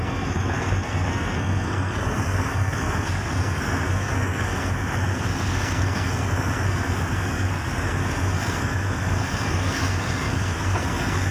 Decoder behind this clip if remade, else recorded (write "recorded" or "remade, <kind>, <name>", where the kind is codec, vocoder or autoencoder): remade, codec, SNAC